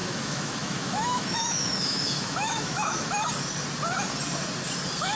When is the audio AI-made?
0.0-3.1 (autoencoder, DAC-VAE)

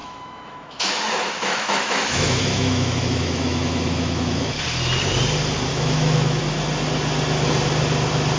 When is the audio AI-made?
0.0-4.6 (autoencoder, DAC-VAE); 5.7-6.4

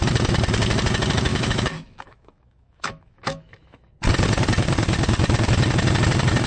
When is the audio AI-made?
1.3-3.9 (autoencoder, DAC-VAE)

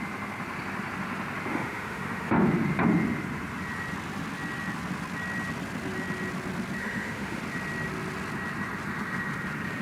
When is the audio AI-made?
1.5-2.3 (autoencoder, DAC-VAE); 6.8-7.4

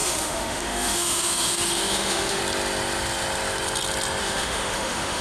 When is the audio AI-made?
0.0-2.4 (autoencoder, DAC-VAE); 4.2-5.2

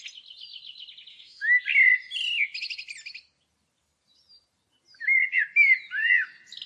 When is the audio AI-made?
1.1-1.6 (autoencoder, DAC-VAE)

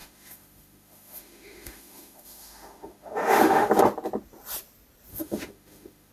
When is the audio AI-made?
0.0-3.7 (autoencoder, DAC-VAE); 5.1-6.1

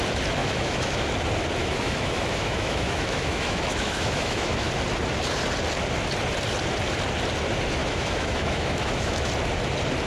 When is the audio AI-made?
0.4-1.1 (autoencoder, DAC-VAE); 1.6-4.7; 7.8-9.3